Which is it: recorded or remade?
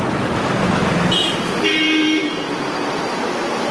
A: remade